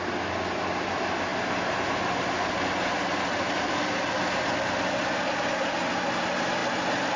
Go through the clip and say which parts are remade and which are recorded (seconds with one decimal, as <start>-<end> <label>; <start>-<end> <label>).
0.0-7.2 recorded